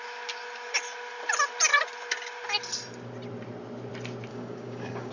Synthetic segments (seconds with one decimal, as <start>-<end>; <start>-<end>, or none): 4.3-5.1